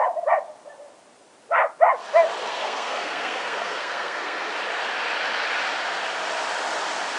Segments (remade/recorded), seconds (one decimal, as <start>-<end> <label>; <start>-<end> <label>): 0.0-2.5 recorded; 2.5-4.5 remade; 4.5-7.2 recorded